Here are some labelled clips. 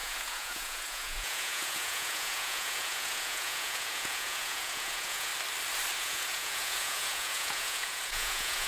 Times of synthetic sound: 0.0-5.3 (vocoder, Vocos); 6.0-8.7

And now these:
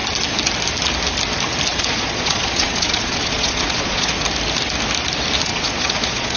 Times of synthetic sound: 1.7-4.1 (vocoder, Vocos); 5.5-6.4

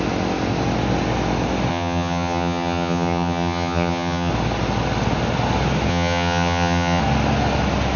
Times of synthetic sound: 1.7-4.3 (vocoder, HiFi-GAN); 5.9-7.0

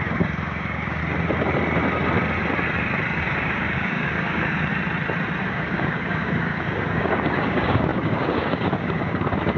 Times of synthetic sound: 0.0-1.0 (codec, DAC); 3.2-4.7; 5.5-9.6

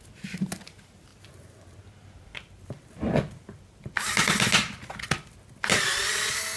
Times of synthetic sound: none

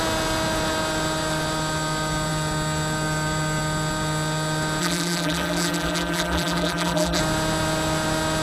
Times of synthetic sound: 4.8-7.2 (vocoder, BigVGAN v2)